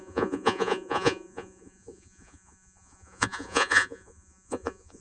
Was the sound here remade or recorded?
remade